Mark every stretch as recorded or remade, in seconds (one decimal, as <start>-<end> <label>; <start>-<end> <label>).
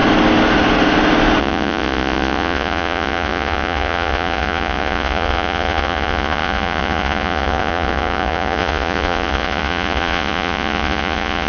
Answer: 0.0-1.4 recorded; 1.4-11.5 remade